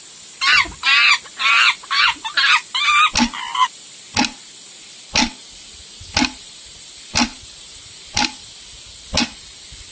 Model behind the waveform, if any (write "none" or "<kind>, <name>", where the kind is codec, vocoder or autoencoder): none